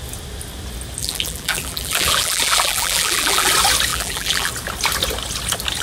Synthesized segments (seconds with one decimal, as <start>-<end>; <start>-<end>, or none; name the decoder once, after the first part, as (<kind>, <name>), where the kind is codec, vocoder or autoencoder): 1.0-3.5 (vocoder, BigVGAN v2); 3.9-4.5